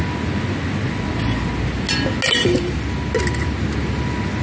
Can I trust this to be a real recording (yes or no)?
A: yes